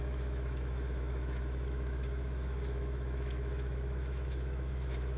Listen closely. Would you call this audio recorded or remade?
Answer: remade